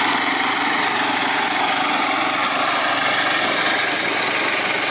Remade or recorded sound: recorded